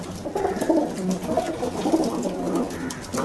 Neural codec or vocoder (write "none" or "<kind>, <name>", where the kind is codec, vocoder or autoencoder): none